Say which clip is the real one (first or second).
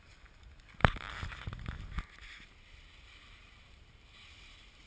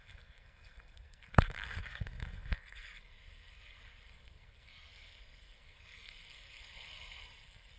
first